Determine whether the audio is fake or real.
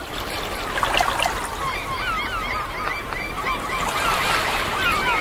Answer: real